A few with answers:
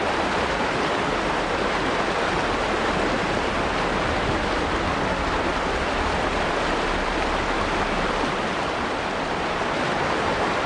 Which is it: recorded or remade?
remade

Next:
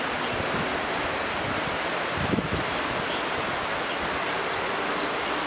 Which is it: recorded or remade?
recorded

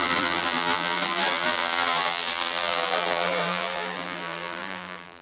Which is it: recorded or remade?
remade